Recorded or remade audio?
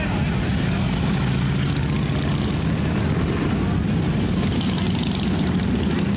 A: recorded